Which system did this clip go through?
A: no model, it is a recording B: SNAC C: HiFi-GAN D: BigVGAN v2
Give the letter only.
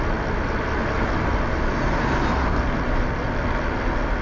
A